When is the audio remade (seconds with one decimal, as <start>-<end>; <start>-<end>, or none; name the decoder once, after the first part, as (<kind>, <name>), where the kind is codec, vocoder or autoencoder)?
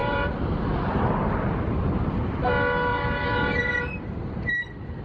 0.0-0.6 (vocoder, BigVGAN v2); 2.9-4.6